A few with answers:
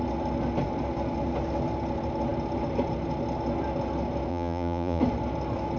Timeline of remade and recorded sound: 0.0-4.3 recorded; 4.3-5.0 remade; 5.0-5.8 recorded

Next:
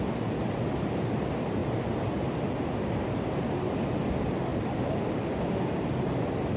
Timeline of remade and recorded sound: 0.0-6.6 recorded

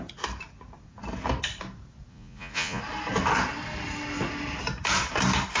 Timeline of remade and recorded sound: 0.0-2.1 recorded; 2.1-2.8 remade; 2.8-5.6 recorded

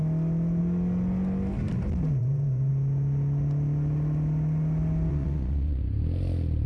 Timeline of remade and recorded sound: 0.0-2.0 recorded; 2.0-2.7 remade; 2.7-5.1 recorded; 5.1-5.8 remade; 5.8-6.7 recorded

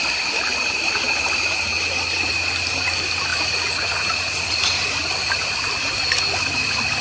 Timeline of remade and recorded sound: 0.0-3.3 recorded; 3.3-4.6 remade; 4.6-7.0 recorded

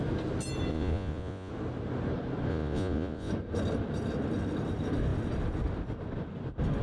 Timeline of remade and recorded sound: 0.0-0.7 recorded; 0.7-1.5 remade; 1.5-2.5 recorded; 2.5-3.3 remade; 3.3-6.8 recorded